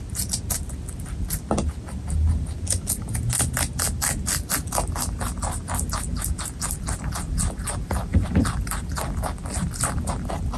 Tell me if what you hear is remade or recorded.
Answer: recorded